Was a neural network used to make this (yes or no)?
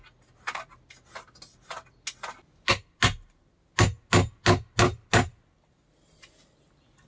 no